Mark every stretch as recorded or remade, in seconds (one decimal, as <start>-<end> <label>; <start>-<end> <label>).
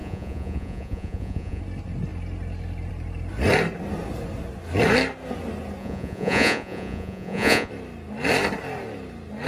0.0-1.6 remade; 1.6-5.8 recorded; 5.8-7.7 remade; 7.7-9.5 recorded